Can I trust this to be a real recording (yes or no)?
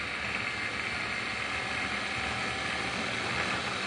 yes